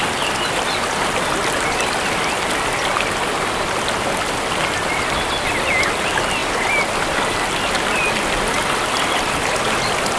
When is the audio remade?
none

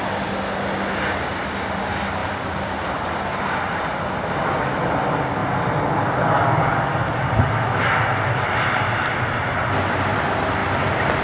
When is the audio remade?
none

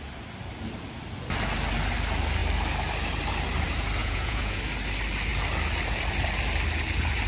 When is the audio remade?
4.0-4.6 (vocoder, Vocos)

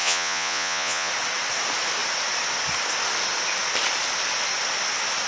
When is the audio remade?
0.0-1.1 (vocoder, Vocos)